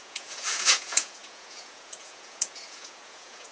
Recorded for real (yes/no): no